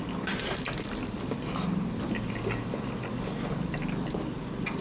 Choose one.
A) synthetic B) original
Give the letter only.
B